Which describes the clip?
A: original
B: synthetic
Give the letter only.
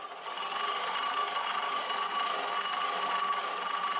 A